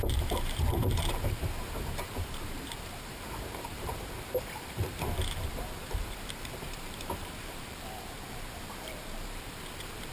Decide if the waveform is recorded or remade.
remade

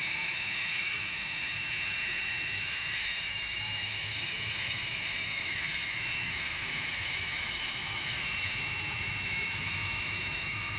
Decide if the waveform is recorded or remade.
remade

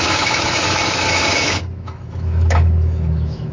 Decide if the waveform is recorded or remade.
remade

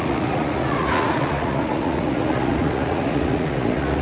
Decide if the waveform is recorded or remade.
remade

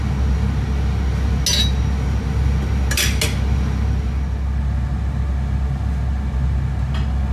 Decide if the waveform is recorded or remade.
recorded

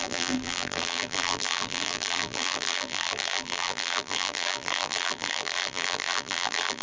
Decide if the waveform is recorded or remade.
remade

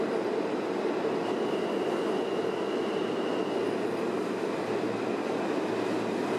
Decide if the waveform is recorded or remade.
recorded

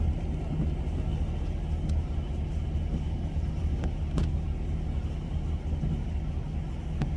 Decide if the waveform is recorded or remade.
recorded